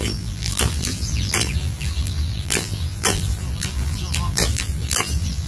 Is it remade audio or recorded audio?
remade